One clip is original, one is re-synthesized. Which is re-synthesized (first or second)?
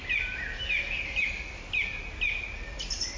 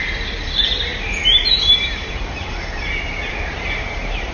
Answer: second